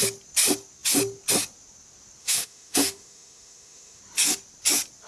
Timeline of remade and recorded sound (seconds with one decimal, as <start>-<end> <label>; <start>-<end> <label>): 0.0-2.2 recorded; 2.2-4.0 remade; 4.0-5.1 recorded